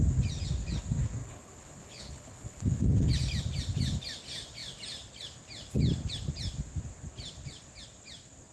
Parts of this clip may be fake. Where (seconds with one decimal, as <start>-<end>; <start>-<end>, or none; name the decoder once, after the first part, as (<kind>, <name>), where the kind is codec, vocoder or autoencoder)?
1.2-3.1 (codec, HILCodec)